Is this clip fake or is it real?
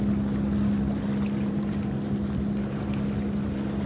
real